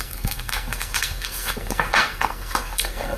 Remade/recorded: remade